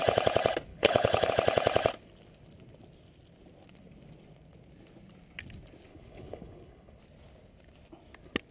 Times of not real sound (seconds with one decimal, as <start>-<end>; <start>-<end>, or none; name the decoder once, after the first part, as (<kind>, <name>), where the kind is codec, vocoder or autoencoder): 0.7-1.3 (codec, HILCodec); 5.9-7.0